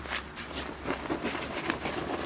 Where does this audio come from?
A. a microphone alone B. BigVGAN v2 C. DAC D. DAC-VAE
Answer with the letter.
A